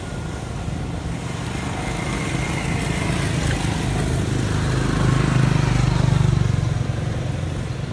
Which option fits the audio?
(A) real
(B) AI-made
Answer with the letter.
A